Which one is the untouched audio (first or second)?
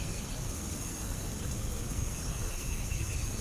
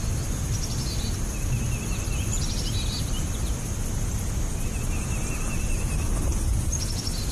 second